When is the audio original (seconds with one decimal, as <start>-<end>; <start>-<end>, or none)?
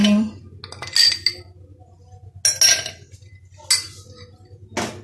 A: 0.0-5.0